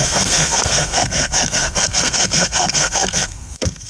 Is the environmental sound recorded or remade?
remade